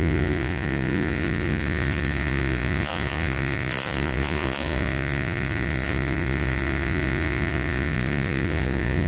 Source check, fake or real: fake